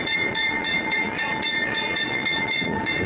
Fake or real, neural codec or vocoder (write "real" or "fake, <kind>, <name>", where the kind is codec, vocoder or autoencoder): fake, vocoder, Vocos